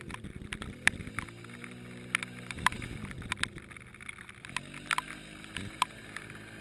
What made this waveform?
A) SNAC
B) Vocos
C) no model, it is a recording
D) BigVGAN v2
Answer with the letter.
C